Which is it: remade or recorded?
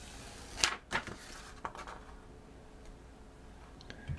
recorded